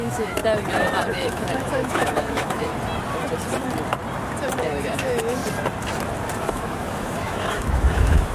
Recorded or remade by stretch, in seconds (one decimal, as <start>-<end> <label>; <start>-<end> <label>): 0.0-0.4 remade; 0.4-1.1 recorded; 1.1-2.7 remade; 2.7-4.6 recorded; 4.6-5.4 remade; 5.4-6.4 recorded; 6.4-8.3 remade